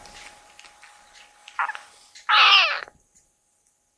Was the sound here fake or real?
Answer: real